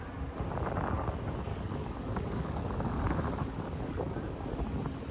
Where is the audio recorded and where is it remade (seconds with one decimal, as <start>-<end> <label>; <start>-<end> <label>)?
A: 0.0-1.5 recorded; 1.5-4.6 remade; 4.6-5.1 recorded